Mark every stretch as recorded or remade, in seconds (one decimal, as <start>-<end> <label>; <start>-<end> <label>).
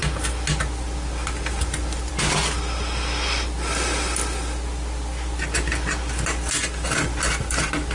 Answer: 0.0-7.9 recorded